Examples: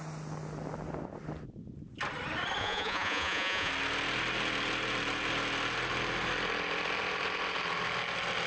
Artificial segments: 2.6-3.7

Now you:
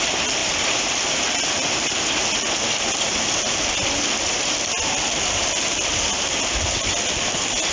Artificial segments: none